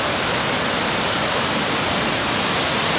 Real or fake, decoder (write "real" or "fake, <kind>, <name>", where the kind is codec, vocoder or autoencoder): real